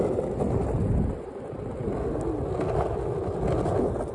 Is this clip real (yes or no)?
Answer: yes